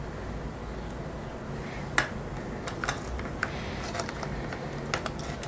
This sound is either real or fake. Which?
real